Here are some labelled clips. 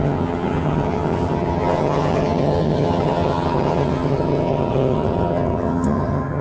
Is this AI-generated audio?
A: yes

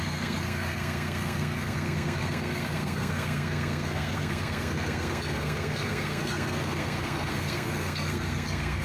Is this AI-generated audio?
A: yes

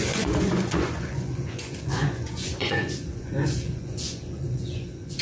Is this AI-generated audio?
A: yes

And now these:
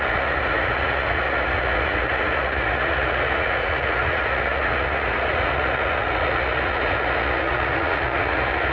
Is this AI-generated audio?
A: yes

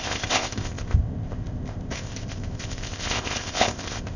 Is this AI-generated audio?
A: yes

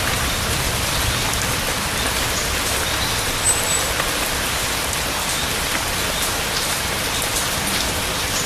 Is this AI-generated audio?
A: no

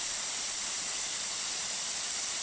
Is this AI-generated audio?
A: no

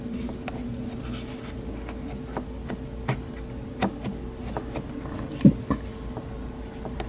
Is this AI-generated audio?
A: no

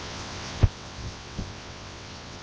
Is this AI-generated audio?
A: yes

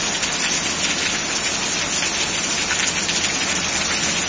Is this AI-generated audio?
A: no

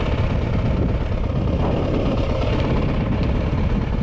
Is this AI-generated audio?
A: no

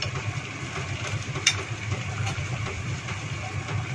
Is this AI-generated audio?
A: yes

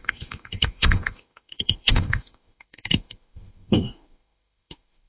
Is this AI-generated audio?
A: yes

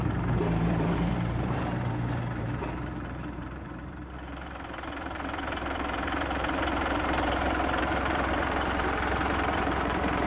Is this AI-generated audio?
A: yes